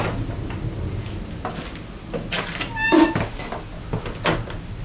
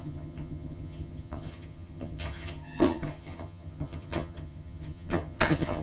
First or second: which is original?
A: first